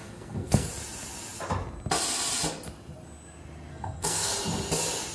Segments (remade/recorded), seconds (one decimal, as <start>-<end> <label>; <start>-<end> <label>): 0.0-0.7 remade; 0.7-3.7 recorded; 3.7-4.3 remade; 4.3-5.1 recorded